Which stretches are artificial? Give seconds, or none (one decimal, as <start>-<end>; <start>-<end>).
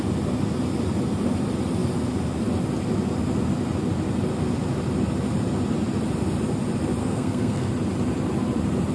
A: 7.0-7.7